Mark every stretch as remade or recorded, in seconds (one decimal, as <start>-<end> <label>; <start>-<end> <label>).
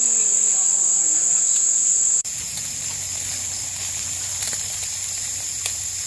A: 0.0-0.9 recorded; 0.9-2.7 remade; 2.7-6.1 recorded